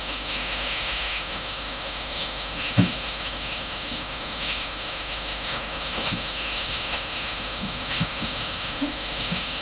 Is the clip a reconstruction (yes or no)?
yes